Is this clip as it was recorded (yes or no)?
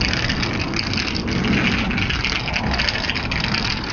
yes